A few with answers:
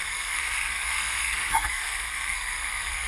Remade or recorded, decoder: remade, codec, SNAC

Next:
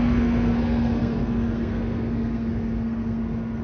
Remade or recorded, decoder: remade, codec, SNAC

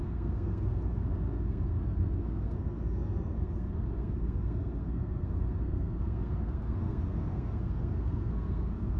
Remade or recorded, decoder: remade, codec, SNAC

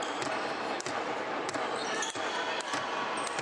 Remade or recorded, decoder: recorded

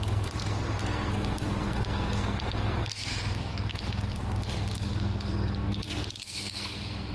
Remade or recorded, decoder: remade, codec, SNAC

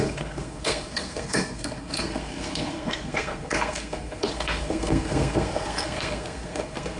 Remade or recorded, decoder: remade, codec, SNAC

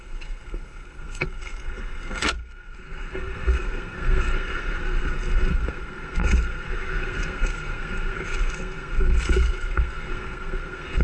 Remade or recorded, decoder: remade, codec, SNAC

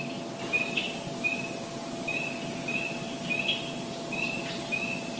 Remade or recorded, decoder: recorded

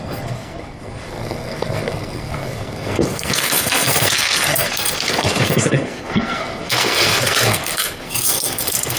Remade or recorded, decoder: remade, codec, SNAC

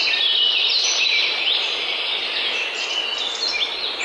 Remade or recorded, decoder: recorded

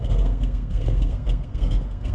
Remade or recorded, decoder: remade, codec, SNAC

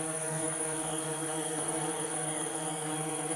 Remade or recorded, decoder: remade, codec, SNAC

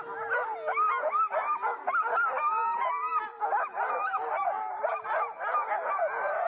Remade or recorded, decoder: recorded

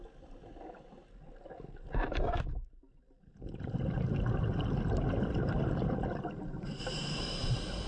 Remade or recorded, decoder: recorded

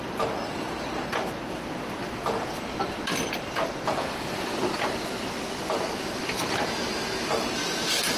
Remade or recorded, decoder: recorded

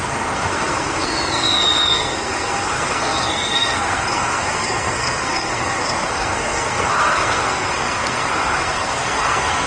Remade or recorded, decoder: remade, codec, SNAC